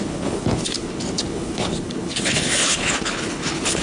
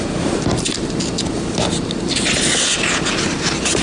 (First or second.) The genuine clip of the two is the second